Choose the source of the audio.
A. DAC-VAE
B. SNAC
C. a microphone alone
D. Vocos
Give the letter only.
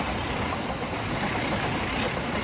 C